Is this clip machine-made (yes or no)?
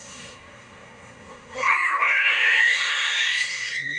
yes